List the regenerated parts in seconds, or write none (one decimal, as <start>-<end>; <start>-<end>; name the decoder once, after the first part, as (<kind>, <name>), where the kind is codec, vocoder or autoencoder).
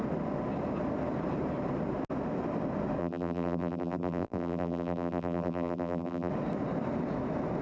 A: 3.0-6.3 (vocoder, BigVGAN v2)